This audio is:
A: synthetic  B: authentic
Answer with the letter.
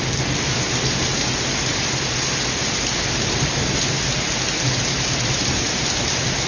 B